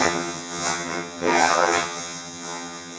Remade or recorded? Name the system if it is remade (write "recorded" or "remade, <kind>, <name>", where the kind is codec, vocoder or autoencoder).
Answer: remade, vocoder, HiFi-GAN